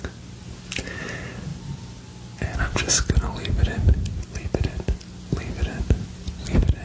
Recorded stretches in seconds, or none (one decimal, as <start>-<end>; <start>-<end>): 0.0-6.8